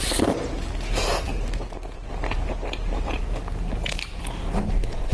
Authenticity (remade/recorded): recorded